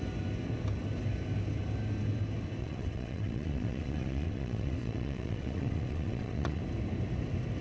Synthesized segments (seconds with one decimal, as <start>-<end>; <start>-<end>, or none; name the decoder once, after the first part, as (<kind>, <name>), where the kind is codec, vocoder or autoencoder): 2.6-6.6 (vocoder, WaveNeXt)